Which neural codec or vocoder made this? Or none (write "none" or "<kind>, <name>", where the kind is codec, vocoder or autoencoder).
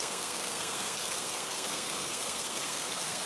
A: codec, SNAC